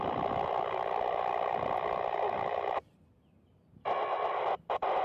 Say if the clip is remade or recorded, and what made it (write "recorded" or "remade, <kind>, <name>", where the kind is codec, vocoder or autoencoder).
recorded